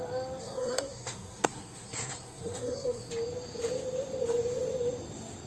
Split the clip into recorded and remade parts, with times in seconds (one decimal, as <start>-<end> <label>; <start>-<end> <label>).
0.0-0.4 recorded; 0.4-3.1 remade; 3.1-5.5 recorded